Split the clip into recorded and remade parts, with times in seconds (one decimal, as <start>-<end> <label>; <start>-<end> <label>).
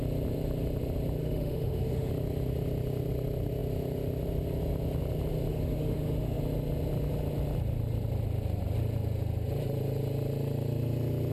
0.0-1.2 recorded; 1.2-2.1 remade; 2.1-5.5 recorded; 5.5-6.4 remade; 6.4-11.3 recorded